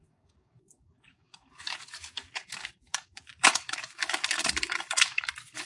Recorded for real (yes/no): no